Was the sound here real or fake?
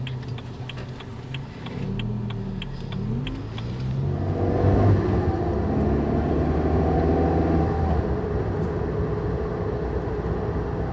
real